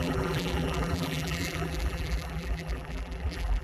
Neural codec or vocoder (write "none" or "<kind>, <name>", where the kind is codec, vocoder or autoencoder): vocoder, BigVGAN v2